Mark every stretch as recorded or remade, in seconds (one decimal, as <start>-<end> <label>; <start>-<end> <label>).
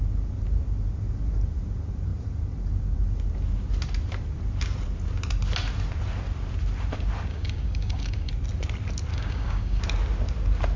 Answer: 0.0-7.3 recorded; 7.3-8.3 remade; 8.3-9.1 recorded; 9.1-9.8 remade; 9.8-10.8 recorded